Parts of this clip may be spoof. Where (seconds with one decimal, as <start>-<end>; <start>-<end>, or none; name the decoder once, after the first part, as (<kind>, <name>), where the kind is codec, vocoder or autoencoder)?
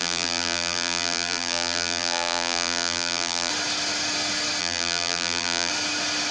0.0-3.5 (vocoder, BigVGAN v2); 4.6-5.7